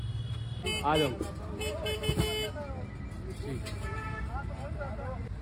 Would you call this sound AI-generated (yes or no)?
no